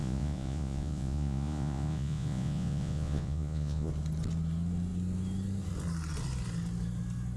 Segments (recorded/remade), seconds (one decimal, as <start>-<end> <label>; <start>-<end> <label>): 0.0-3.9 remade; 3.9-7.4 recorded